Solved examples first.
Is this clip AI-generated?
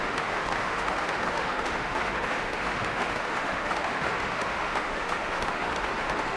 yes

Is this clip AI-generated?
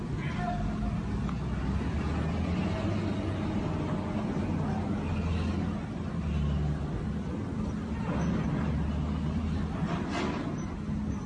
no